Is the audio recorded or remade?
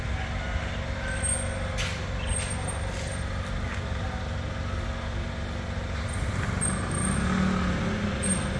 recorded